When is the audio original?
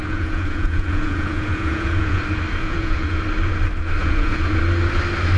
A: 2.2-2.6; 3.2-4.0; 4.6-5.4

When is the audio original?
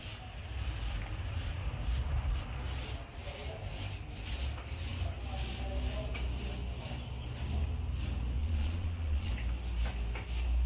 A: 0.0-8.4; 9.3-10.7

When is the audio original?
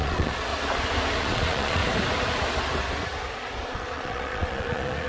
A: 0.5-1.2; 1.8-3.7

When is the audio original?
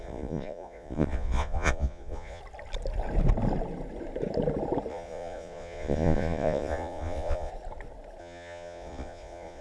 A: 2.4-4.9; 7.5-8.2